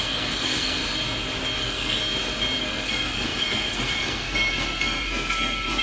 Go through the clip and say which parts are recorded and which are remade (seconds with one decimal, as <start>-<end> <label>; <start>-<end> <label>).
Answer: 0.0-0.8 remade; 0.8-1.6 recorded; 1.6-2.0 remade; 2.0-2.6 recorded; 2.6-5.8 remade